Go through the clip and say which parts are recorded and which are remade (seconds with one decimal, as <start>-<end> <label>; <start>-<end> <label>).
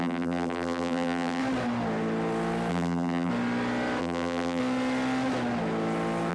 0.0-1.4 remade; 1.4-2.7 recorded; 2.7-3.3 remade; 3.3-4.0 recorded; 4.0-4.6 remade; 4.6-6.3 recorded